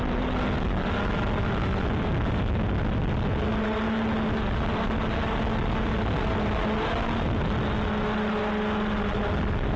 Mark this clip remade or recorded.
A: recorded